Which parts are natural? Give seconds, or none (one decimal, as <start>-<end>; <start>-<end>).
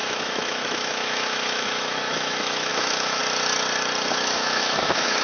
3.2-4.1